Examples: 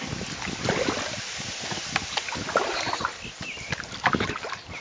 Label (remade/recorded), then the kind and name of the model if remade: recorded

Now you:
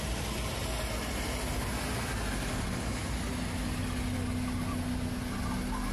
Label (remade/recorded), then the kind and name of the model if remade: recorded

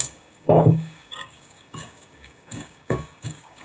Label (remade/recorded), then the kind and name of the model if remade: remade, codec, DAC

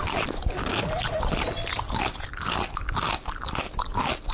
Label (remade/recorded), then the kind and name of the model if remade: recorded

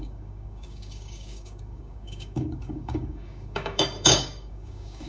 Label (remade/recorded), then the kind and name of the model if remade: remade, codec, DAC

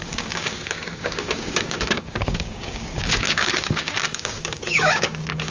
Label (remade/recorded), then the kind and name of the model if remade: remade, codec, DAC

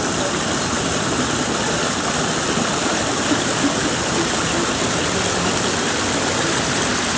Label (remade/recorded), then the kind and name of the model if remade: recorded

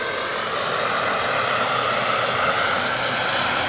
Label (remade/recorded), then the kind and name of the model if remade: recorded